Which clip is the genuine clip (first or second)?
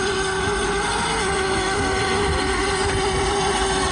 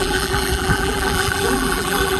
first